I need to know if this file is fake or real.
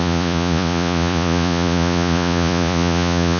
fake